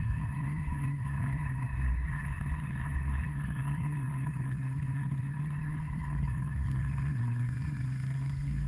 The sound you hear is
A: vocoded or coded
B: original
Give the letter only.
A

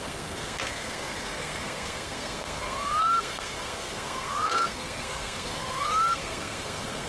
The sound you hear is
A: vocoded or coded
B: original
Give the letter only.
A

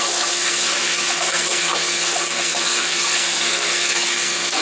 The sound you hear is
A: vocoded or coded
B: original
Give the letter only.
A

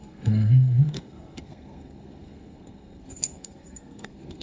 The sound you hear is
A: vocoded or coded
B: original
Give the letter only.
A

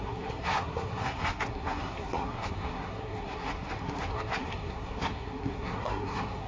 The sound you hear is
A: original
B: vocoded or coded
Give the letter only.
B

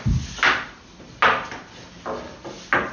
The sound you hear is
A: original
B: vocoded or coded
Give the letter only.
A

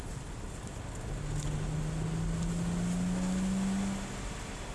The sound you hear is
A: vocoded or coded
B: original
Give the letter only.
B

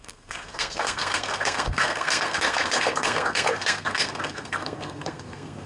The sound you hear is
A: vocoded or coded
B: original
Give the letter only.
A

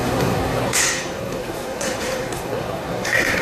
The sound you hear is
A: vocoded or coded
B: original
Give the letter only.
A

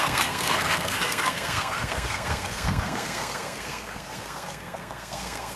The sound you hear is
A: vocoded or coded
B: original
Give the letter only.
A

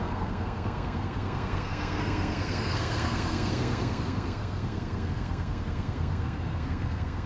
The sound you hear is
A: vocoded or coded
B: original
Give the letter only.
A